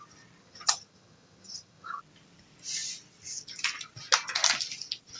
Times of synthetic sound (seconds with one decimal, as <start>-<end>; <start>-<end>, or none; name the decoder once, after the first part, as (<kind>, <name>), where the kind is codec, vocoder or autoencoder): 0.4-2.0 (vocoder, HiFi-GAN)